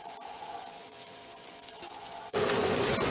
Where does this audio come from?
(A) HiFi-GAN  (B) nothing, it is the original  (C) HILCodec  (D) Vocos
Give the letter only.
D